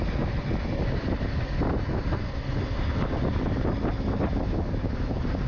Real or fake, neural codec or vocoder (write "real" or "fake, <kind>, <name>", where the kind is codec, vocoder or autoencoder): real